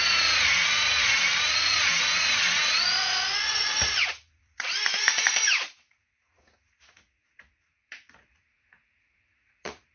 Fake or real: fake